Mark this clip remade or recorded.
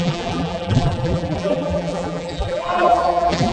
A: remade